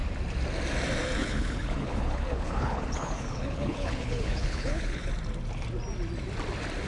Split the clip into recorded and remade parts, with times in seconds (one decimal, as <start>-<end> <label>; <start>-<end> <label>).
0.0-1.2 recorded; 1.2-5.1 remade; 5.1-6.9 recorded